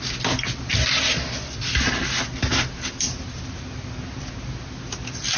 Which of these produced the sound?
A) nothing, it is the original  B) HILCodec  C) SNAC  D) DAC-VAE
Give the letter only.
A